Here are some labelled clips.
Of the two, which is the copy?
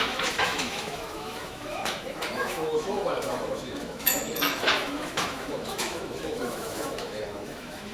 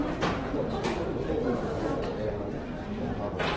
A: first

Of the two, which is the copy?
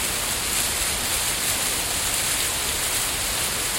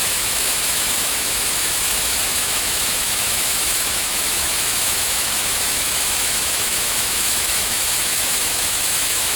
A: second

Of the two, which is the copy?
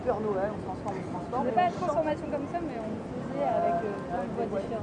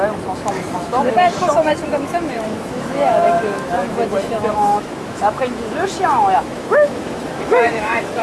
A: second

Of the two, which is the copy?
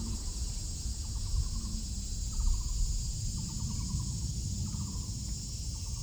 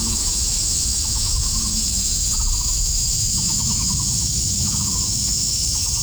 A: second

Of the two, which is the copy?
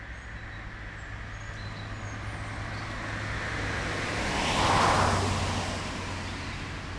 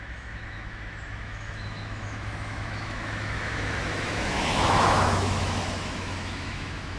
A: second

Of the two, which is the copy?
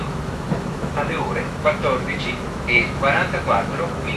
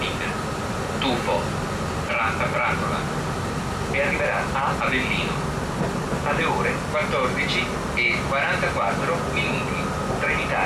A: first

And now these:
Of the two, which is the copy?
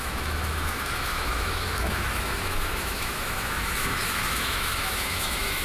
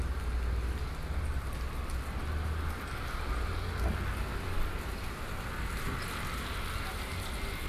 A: first